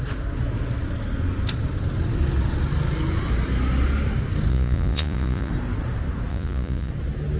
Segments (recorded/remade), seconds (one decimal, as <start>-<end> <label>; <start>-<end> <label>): 0.0-4.5 recorded; 4.5-5.5 remade; 5.5-6.3 recorded; 6.3-6.9 remade; 6.9-7.4 recorded